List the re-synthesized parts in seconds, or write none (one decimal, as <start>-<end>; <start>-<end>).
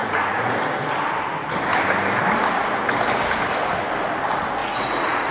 0.0-0.5; 4.6-5.3